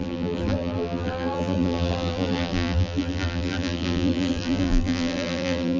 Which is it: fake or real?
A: fake